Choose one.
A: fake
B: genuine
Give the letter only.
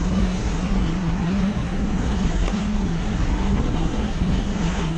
A